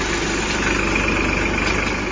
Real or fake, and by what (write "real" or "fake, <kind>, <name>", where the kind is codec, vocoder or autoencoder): real